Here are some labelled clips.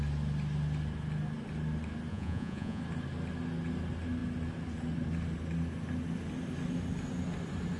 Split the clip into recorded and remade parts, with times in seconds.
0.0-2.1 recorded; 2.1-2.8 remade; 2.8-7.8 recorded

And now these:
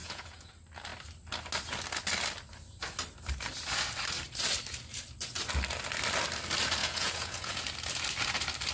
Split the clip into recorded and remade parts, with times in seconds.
0.0-0.5 remade; 0.5-6.8 recorded; 6.8-7.6 remade; 7.6-8.7 recorded

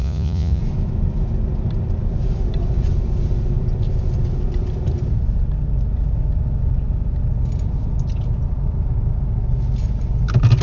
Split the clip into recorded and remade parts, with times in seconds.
0.0-0.6 remade; 0.6-10.6 recorded

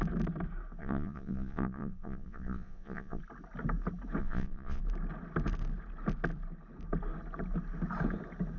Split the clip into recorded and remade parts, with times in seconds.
0.0-0.8 recorded; 0.8-3.2 remade; 3.2-4.2 recorded; 4.2-4.8 remade; 4.8-8.6 recorded

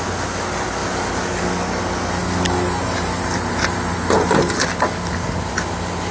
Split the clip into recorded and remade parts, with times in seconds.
0.0-6.1 recorded

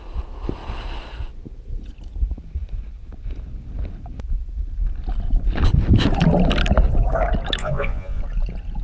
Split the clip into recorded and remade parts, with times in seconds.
0.0-7.6 recorded; 7.6-8.2 remade; 8.2-8.8 recorded

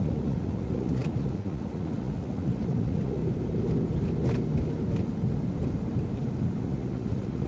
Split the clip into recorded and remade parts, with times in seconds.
0.0-3.2 remade; 3.2-6.6 recorded; 6.6-7.5 remade

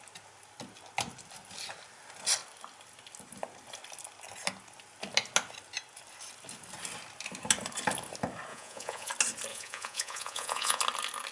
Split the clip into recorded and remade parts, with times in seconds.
0.0-8.5 recorded; 8.5-9.1 remade; 9.1-9.5 recorded; 9.5-10.8 remade; 10.8-11.3 recorded